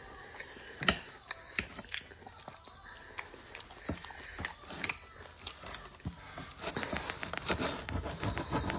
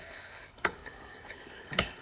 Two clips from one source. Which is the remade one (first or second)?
second